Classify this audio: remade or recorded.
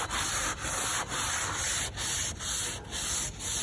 recorded